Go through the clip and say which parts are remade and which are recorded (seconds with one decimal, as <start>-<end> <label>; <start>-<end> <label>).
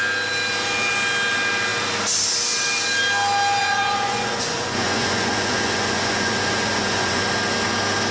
0.0-3.6 recorded; 3.6-7.2 remade; 7.2-8.1 recorded